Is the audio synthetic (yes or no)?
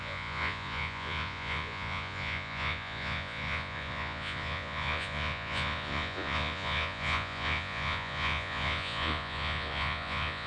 yes